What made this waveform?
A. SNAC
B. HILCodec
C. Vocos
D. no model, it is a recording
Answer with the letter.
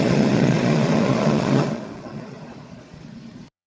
C